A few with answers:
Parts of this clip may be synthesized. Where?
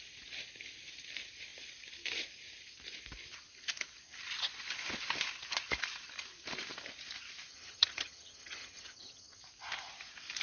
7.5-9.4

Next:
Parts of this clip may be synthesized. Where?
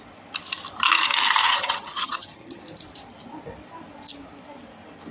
1.4-2.6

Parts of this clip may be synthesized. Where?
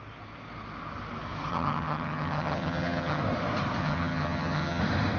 1.5-3.2; 3.8-4.8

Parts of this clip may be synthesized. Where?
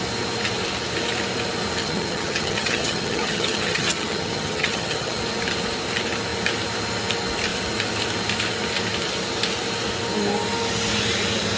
1.8-5.2